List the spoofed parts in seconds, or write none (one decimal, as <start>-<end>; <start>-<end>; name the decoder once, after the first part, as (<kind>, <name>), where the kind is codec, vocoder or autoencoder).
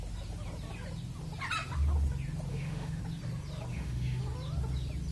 2.5-3.0 (autoencoder, DAC-VAE); 3.7-4.2